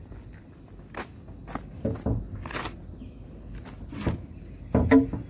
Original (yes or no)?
yes